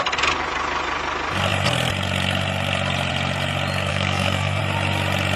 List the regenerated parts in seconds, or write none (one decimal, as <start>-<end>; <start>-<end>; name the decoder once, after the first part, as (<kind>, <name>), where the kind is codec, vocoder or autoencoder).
3.9-4.6 (codec, SNAC)